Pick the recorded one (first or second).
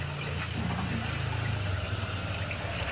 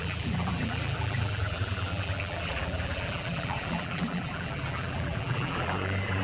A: first